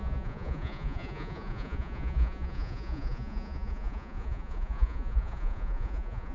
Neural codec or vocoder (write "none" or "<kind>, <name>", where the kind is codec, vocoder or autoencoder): vocoder, Vocos